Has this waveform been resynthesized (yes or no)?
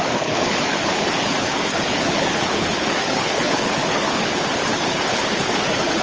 yes